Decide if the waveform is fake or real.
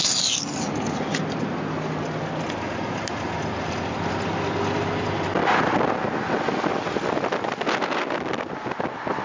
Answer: real